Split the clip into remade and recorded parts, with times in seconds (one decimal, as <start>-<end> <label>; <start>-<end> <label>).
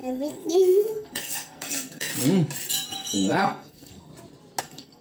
0.0-2.1 remade; 2.1-2.7 recorded; 2.7-4.1 remade; 4.1-4.6 recorded; 4.6-5.0 remade